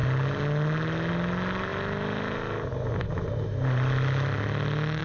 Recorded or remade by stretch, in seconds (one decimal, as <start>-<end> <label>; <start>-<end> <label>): 0.0-5.0 recorded